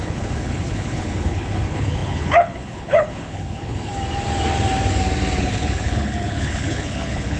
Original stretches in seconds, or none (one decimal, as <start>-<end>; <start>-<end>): 3.9-5.4